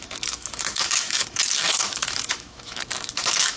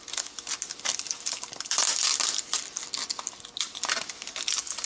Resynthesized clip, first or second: first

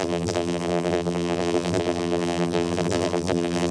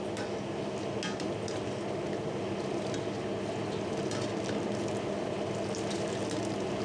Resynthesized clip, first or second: first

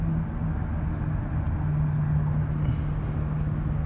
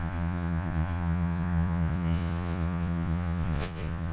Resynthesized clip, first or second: second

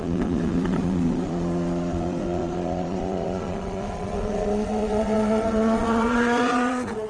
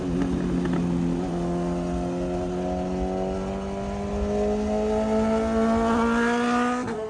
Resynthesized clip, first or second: first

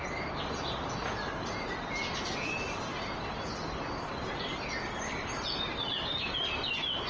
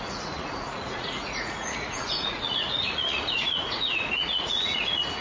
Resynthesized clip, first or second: second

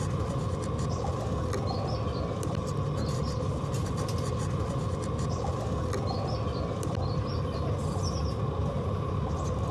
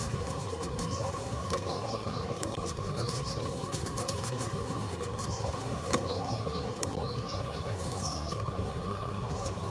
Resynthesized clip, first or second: second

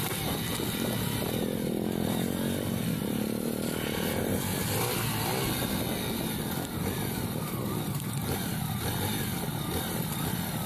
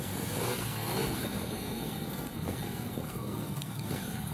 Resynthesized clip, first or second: second